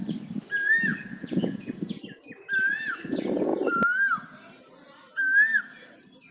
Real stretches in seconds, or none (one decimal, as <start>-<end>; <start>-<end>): 0.0-0.9; 1.7-6.3